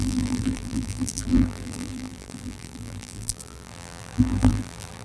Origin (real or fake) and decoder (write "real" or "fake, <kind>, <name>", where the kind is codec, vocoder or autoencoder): fake, vocoder, BigVGAN v2